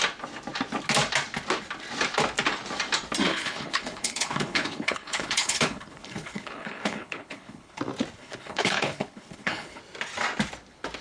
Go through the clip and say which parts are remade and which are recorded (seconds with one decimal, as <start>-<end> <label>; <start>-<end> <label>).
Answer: 0.0-3.3 recorded; 3.3-7.8 remade; 7.8-8.2 recorded; 8.2-9.8 remade; 9.8-11.0 recorded